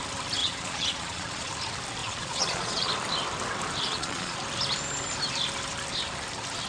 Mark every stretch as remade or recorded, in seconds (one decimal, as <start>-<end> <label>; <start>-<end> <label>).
0.0-0.4 recorded; 0.4-1.5 remade; 1.5-2.0 recorded; 2.0-2.9 remade; 2.9-3.8 recorded; 3.8-4.4 remade; 4.4-6.7 recorded